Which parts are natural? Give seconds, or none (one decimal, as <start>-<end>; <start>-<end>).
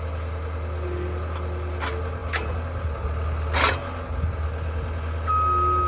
0.0-5.9